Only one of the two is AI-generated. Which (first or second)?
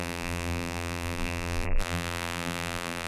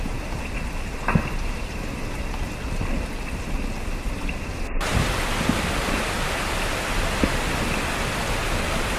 first